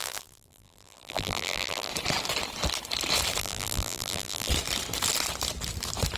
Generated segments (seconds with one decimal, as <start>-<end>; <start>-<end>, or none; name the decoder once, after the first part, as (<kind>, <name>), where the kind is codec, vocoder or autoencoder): 0.0-1.9 (vocoder, BigVGAN v2); 3.4-4.5